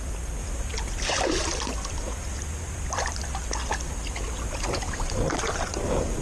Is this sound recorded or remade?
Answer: recorded